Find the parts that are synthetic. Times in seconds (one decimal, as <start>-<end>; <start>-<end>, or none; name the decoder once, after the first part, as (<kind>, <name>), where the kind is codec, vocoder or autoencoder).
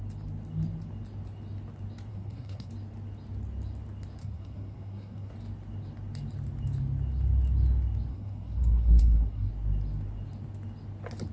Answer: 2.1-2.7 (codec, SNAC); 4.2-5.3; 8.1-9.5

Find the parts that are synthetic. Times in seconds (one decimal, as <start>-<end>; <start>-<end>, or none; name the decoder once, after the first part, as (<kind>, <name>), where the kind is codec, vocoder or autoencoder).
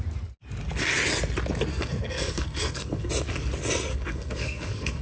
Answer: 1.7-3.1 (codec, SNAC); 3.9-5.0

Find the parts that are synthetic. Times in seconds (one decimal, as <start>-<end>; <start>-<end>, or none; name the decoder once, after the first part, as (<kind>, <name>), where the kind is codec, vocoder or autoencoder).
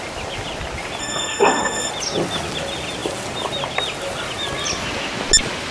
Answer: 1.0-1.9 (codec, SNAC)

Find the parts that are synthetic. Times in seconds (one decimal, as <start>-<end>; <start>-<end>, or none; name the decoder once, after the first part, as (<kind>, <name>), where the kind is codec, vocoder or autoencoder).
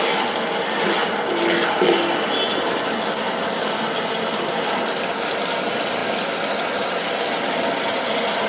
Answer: none